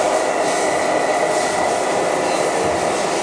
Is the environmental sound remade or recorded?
recorded